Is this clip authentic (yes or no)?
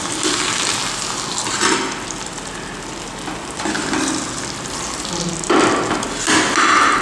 yes